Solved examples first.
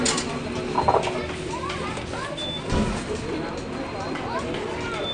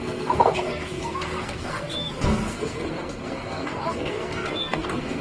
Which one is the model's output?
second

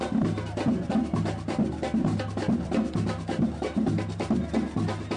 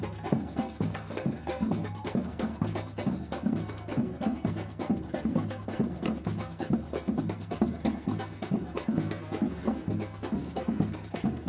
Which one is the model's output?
second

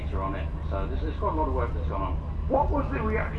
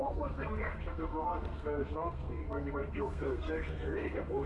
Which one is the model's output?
second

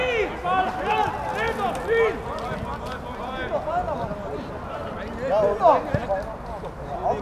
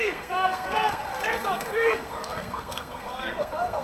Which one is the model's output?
second